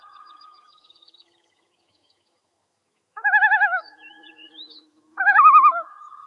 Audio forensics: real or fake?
fake